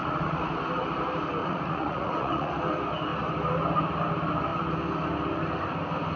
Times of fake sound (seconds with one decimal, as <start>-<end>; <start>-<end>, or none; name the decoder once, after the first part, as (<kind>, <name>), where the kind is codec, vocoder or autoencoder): 0.0-0.5 (vocoder, Vocos); 1.4-2.5